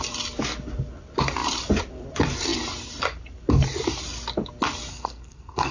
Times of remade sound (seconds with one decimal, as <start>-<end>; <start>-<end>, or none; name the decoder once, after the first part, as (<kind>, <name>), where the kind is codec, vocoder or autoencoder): 4.9-5.7 (codec, SNAC)